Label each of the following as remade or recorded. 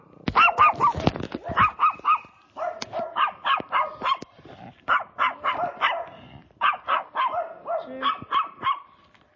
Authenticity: recorded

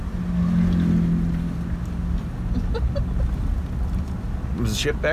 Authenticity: recorded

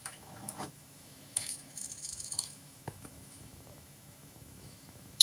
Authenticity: remade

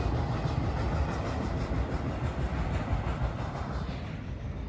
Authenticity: recorded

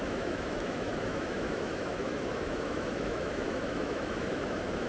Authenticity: remade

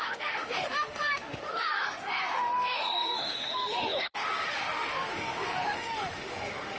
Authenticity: remade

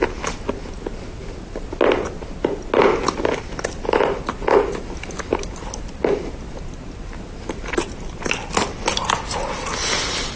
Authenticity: recorded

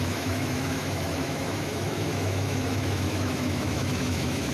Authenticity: remade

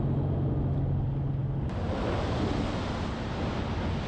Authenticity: recorded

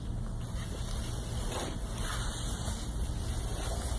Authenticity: recorded